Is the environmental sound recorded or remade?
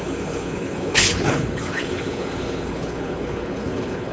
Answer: remade